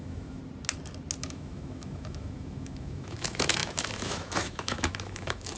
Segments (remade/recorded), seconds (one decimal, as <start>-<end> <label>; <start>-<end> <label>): 0.0-0.4 remade; 0.4-1.2 recorded; 1.2-5.6 remade